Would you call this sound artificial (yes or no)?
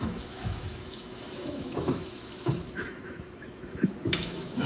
yes